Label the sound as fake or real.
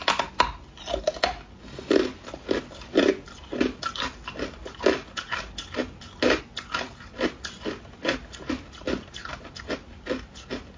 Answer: real